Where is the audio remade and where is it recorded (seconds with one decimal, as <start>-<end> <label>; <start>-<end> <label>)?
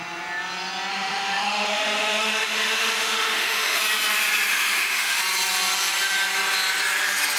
0.0-0.9 recorded; 0.9-3.8 remade; 3.8-4.5 recorded; 4.5-5.2 remade; 5.2-7.4 recorded